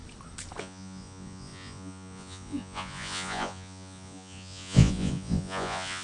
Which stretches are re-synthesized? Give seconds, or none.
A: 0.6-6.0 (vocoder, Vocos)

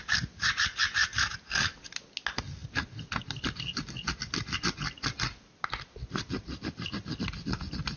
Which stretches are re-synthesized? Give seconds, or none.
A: none

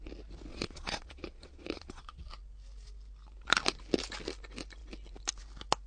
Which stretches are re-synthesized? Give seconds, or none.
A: 0.5-2.2 (vocoder, Vocos)

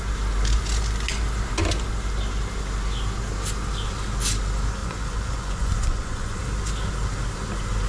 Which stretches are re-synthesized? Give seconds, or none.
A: 4.8-6.4 (vocoder, Vocos)

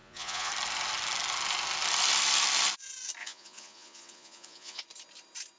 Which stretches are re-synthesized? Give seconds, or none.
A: 0.0-0.5 (vocoder, Vocos); 3.2-4.8

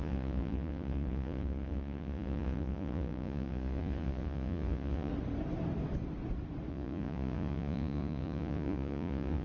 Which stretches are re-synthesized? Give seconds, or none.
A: 0.0-5.1 (vocoder, Vocos); 6.7-9.4

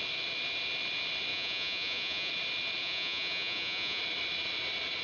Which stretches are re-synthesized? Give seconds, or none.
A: 1.3-2.3 (vocoder, Vocos); 2.8-4.0

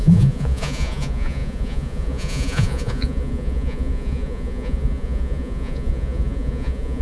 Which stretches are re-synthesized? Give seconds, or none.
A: 0.0-7.0 (vocoder, Vocos)